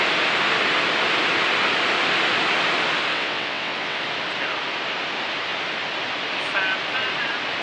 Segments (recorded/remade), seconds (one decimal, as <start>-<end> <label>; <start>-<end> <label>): 0.0-3.1 recorded; 3.1-4.0 remade; 4.0-7.6 recorded